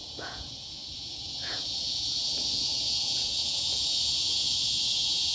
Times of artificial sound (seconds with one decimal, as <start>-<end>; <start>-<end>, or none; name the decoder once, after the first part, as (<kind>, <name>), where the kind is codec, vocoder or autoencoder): 0.0-5.3 (vocoder, Vocos)